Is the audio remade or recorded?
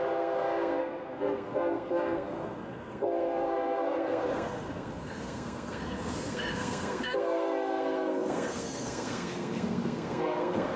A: remade